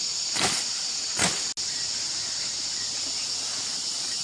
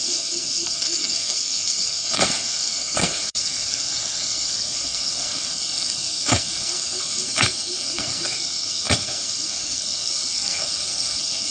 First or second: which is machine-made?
second